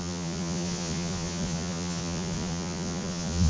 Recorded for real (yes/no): no